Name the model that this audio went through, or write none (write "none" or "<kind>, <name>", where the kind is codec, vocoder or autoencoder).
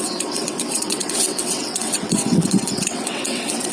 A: vocoder, WaveNeXt